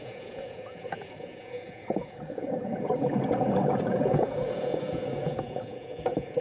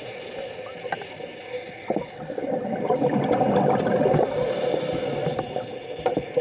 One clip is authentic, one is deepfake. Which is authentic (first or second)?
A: second